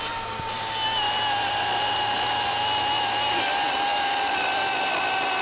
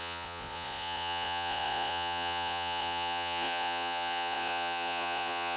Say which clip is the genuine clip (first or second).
first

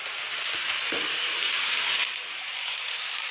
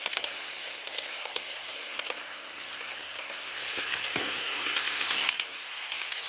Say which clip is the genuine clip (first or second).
first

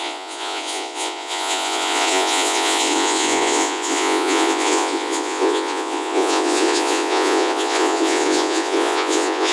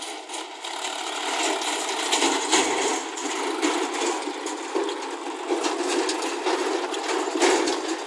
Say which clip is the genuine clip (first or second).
second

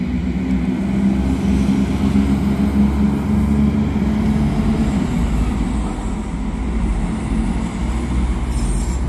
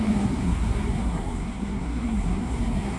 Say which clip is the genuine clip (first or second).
first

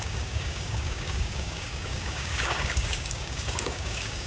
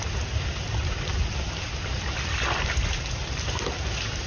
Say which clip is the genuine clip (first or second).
second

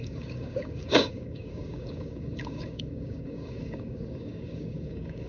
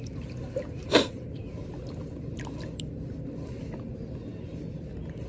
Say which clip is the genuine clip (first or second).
second